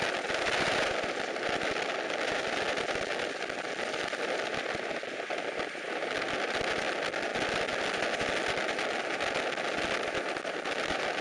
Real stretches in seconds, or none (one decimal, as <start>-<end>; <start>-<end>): 0.0-11.2